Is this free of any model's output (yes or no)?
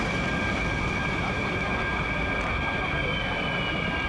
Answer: yes